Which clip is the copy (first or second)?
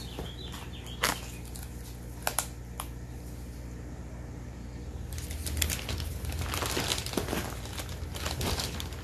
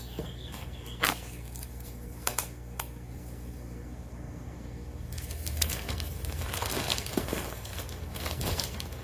second